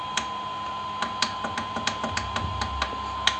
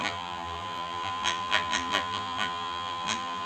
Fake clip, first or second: second